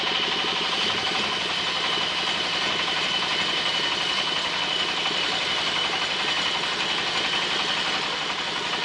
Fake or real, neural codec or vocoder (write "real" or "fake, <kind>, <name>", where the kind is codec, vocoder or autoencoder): real